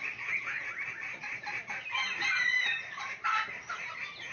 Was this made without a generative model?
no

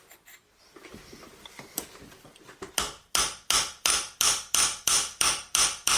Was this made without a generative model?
no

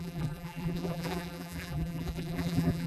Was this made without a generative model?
no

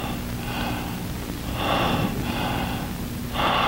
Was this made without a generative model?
yes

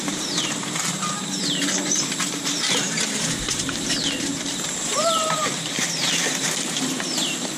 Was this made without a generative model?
no